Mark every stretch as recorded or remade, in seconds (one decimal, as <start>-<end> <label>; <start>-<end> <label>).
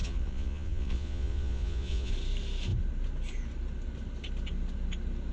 0.0-2.1 remade; 2.1-5.3 recorded